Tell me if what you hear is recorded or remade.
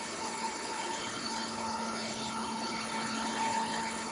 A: remade